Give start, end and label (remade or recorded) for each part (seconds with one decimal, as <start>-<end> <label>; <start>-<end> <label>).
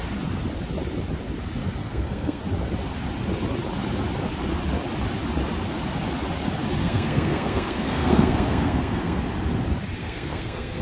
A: 0.0-1.8 recorded; 1.8-2.4 remade; 2.4-6.8 recorded; 6.8-9.2 remade; 9.2-10.0 recorded; 10.0-10.8 remade